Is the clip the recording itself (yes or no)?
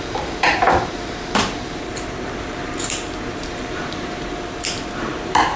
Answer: no